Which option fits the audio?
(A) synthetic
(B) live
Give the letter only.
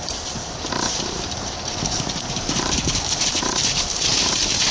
A